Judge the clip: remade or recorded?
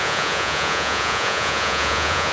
remade